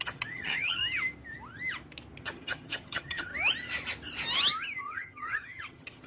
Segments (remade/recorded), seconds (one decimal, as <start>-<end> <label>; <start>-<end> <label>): 0.0-0.8 remade; 0.8-2.2 recorded; 2.2-3.3 remade; 3.3-4.8 recorded; 4.8-6.1 remade